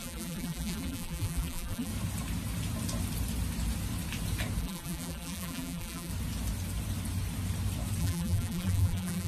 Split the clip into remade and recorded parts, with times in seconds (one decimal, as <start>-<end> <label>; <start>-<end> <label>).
0.0-1.9 remade; 1.9-4.6 recorded; 4.6-6.1 remade; 6.1-8.0 recorded; 8.0-9.3 remade